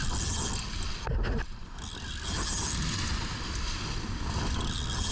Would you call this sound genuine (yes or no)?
yes